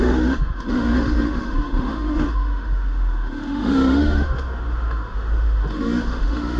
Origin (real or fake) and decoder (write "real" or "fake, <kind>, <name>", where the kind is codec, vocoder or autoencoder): fake, autoencoder, DAC-VAE